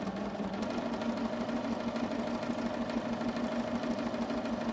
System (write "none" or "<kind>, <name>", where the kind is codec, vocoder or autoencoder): none